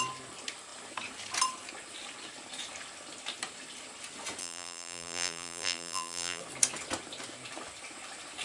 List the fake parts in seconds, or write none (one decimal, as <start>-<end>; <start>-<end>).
4.4-6.4

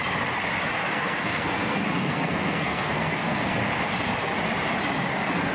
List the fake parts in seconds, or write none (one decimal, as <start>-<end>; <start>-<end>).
0.8-3.6

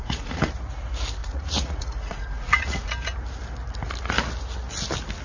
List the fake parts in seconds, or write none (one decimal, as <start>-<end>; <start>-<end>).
0.0-0.5; 1.2-2.9

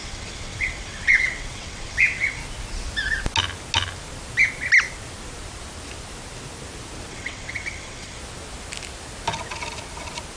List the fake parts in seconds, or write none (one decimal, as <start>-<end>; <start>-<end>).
0.0-2.4; 7.1-8.2

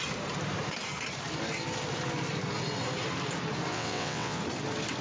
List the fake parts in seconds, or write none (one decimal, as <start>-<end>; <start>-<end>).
3.7-4.4

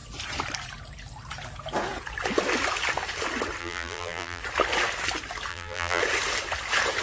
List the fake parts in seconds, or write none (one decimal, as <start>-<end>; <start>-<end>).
3.6-4.4; 5.5-6.0

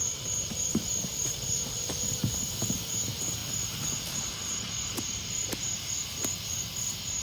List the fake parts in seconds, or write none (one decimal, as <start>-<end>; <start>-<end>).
none

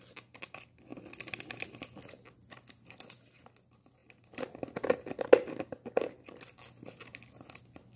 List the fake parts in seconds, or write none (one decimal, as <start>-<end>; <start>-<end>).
none